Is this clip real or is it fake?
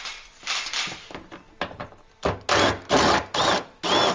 real